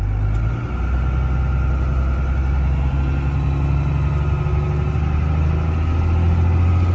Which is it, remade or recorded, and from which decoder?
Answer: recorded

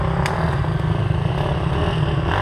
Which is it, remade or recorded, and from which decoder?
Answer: recorded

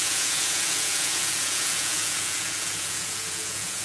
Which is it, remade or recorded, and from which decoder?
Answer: remade, vocoder, Vocos